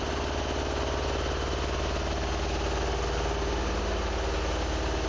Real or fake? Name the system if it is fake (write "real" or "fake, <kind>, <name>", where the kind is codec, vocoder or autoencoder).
real